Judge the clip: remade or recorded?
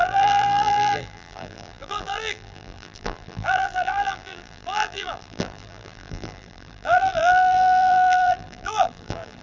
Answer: remade